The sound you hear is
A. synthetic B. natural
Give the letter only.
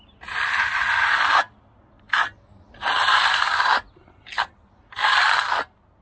B